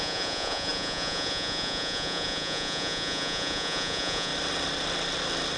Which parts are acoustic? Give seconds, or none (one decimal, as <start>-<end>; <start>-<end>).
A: 4.3-5.6